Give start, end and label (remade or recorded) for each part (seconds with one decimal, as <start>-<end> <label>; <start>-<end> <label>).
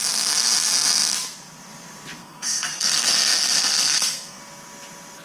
0.0-2.2 recorded; 2.2-4.4 remade; 4.4-5.2 recorded